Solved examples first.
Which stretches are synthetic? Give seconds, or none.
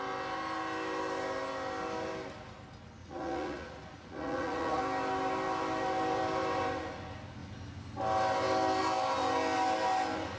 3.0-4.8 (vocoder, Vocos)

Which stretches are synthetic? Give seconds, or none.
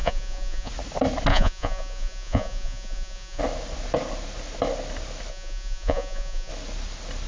0.0-0.7 (vocoder, Vocos); 1.3-3.4; 5.3-6.5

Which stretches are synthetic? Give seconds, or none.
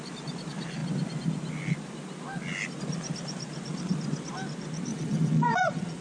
4.9-6.0 (vocoder, Vocos)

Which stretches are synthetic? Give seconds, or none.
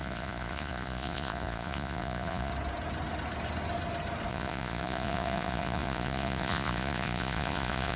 0.0-2.5 (vocoder, Vocos); 4.3-8.0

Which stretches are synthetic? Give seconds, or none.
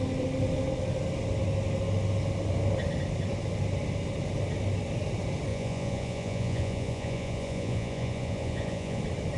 5.5-9.0 (vocoder, Vocos)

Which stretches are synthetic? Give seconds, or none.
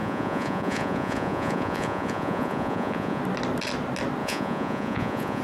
0.0-3.2 (vocoder, Vocos); 4.2-5.4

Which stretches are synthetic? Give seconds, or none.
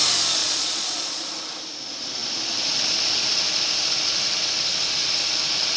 0.4-1.3 (vocoder, Vocos)